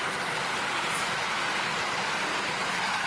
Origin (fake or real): real